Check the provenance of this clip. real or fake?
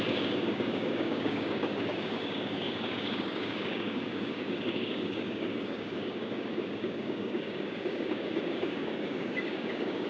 fake